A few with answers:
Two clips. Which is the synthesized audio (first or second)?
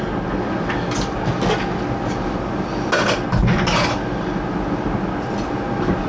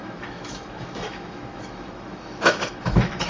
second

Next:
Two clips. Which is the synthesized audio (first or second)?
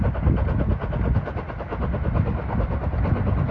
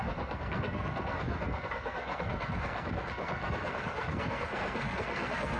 second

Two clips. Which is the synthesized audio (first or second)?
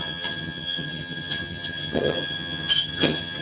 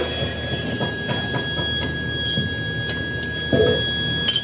first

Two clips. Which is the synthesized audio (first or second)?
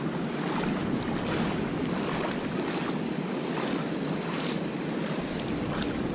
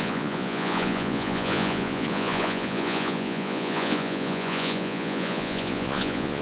second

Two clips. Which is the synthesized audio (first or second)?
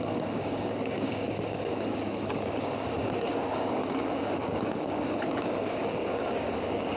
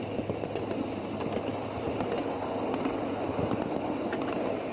first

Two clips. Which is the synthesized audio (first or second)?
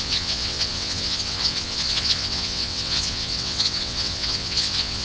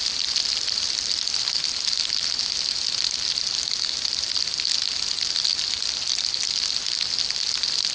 first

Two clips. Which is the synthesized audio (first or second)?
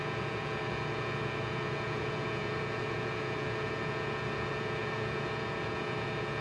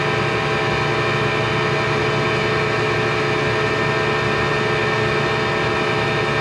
first